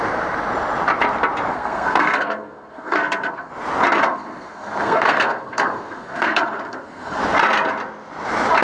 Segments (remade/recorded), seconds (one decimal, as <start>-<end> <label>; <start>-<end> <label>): 0.0-1.5 recorded; 1.5-3.5 remade; 3.5-4.0 recorded; 4.0-7.2 remade; 7.2-8.6 recorded